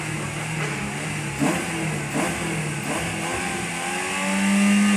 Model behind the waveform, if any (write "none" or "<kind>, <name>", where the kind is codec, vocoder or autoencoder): none